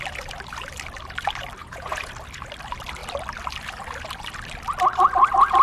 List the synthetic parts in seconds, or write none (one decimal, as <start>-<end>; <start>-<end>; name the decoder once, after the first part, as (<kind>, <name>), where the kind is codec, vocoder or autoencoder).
1.6-2.1 (vocoder, Vocos)